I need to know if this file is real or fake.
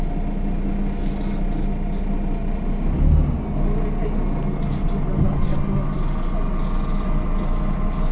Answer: real